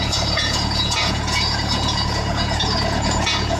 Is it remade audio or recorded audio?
remade